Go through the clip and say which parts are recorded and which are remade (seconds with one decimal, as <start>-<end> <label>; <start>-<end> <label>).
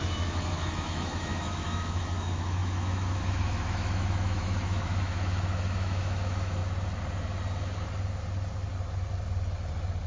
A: 0.0-6.6 remade; 6.6-10.1 recorded